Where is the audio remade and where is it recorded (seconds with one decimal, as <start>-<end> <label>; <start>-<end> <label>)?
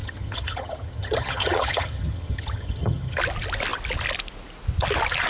0.0-3.2 remade; 3.2-5.3 recorded